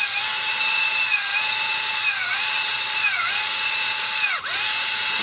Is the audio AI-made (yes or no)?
yes